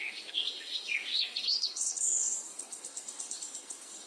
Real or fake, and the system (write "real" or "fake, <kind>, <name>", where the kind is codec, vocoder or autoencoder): fake, codec, SNAC